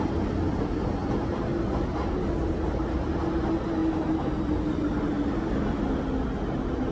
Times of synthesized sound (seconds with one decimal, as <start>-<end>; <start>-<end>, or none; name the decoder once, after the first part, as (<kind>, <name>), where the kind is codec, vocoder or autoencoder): none